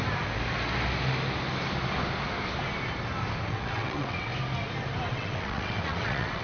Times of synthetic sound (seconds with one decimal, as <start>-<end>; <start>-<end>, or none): 3.5-4.3; 5.1-6.4